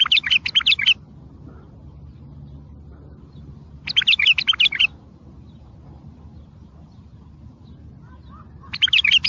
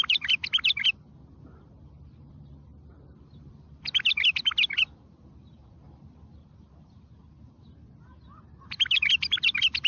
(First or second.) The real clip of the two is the first